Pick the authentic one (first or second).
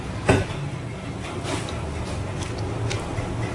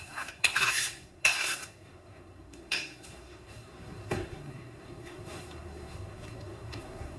first